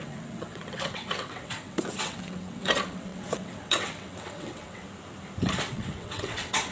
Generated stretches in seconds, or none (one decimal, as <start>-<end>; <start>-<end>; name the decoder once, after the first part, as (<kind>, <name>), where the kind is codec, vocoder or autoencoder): 0.0-4.8 (vocoder, WaveNeXt); 5.6-6.7

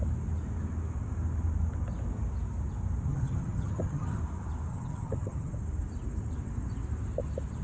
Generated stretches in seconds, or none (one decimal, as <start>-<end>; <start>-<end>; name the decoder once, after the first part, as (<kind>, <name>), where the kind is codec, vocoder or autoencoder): 3.1-4.2 (vocoder, HiFi-GAN); 4.7-5.5

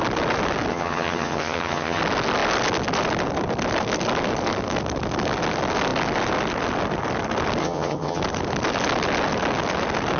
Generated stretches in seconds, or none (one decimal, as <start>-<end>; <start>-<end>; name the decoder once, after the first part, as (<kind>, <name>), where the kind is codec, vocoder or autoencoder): 0.7-2.0 (vocoder, HiFi-GAN); 7.6-8.2

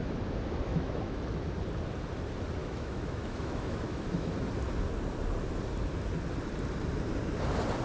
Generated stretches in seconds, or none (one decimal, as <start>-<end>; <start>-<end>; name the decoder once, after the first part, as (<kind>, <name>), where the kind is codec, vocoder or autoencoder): 0.7-1.2 (autoencoder, DAC-VAE); 2.6-4.5

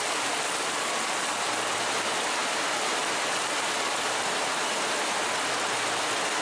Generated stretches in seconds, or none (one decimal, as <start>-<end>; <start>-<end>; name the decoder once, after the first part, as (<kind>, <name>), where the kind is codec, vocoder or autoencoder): none